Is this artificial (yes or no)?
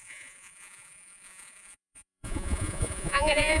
yes